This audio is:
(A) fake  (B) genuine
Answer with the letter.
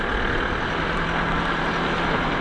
B